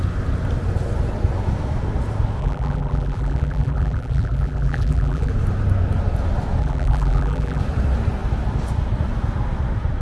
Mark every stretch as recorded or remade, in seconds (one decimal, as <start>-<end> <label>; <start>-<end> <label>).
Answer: 0.0-2.4 recorded; 2.4-5.3 remade; 5.3-6.6 recorded; 6.6-7.6 remade; 7.6-10.0 recorded